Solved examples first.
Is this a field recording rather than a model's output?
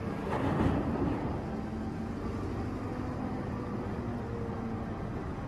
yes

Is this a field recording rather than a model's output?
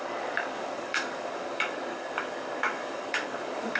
no